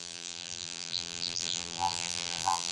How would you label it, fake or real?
fake